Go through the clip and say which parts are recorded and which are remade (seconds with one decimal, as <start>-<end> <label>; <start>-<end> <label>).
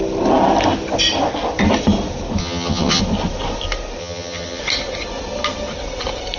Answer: 0.0-2.4 recorded; 2.4-3.0 remade; 3.0-4.0 recorded; 4.0-4.6 remade; 4.6-6.4 recorded